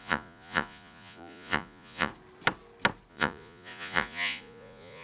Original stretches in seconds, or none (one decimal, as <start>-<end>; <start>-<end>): 2.1-3.1